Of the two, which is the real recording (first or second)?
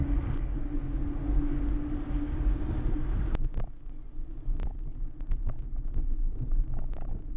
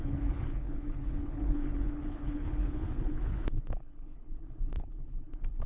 first